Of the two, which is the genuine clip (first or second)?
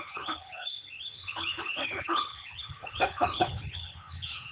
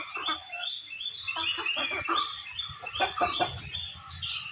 second